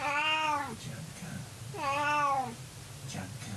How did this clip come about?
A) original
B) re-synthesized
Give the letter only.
A